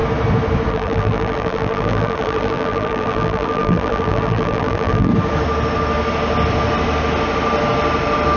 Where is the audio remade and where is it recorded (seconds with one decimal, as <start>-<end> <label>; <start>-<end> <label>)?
0.0-0.7 recorded; 0.7-5.1 remade; 5.1-8.4 recorded